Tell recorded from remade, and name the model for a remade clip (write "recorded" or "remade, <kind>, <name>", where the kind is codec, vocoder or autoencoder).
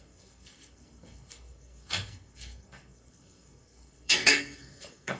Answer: remade, codec, SNAC